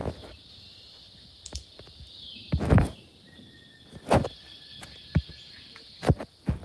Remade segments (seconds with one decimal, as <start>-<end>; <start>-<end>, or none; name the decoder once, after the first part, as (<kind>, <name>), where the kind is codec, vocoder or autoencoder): none